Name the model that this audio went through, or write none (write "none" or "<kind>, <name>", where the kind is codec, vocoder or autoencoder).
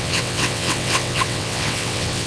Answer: vocoder, WaveNeXt